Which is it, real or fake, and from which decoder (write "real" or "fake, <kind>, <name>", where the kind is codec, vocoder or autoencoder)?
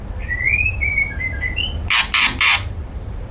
fake, vocoder, BigVGAN v2